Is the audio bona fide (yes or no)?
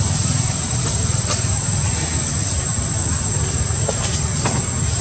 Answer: yes